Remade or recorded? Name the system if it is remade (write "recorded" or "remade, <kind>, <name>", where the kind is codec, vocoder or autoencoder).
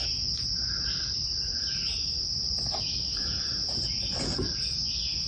recorded